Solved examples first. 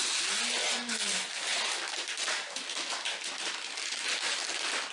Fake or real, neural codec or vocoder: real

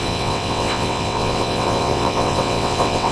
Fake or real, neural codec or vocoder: fake, vocoder, WaveNeXt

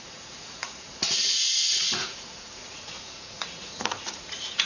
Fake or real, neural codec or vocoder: fake, vocoder, Vocos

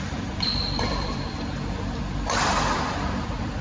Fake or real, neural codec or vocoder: fake, vocoder, BigVGAN v2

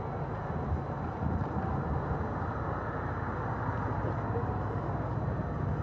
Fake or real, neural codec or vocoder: real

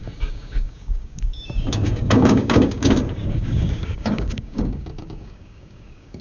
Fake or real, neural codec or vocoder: fake, codec, DAC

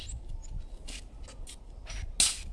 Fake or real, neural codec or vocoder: real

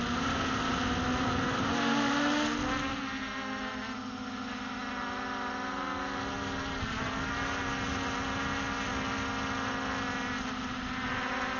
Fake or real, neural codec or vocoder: real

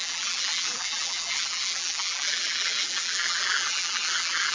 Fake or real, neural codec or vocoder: fake, vocoder, BigVGAN v2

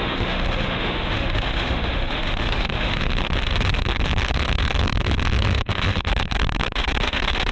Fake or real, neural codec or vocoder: fake, autoencoder, DAC-VAE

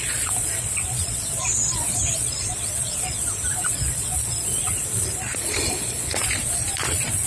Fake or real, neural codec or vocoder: fake, vocoder, Vocos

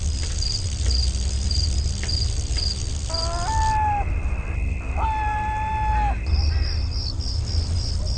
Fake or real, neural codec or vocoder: real